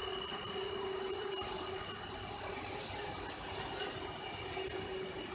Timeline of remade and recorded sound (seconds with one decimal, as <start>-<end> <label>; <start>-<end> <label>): 0.0-2.7 remade; 2.7-5.3 recorded